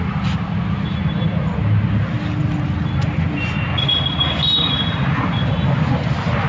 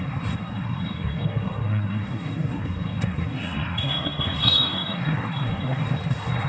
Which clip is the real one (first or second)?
first